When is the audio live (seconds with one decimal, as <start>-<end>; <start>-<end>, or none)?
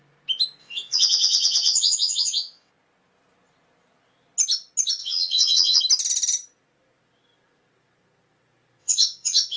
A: 0.0-0.6; 2.7-5.0; 5.8-8.8